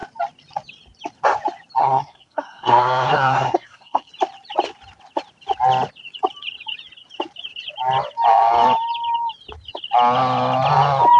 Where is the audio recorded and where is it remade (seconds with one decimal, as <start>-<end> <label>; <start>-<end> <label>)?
0.0-1.8 recorded; 1.8-4.1 remade; 4.1-11.2 recorded